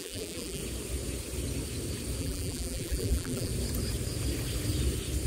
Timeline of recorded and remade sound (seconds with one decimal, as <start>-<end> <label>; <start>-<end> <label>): 0.0-0.6 remade; 0.6-2.2 recorded; 2.2-3.5 remade; 3.5-5.3 recorded